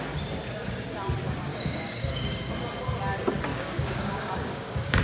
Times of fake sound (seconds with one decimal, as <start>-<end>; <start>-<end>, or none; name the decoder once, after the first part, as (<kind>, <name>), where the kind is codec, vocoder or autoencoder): 1.5-2.5 (codec, DAC); 3.5-5.0